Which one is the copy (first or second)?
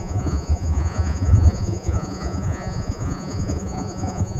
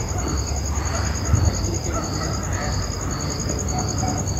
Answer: first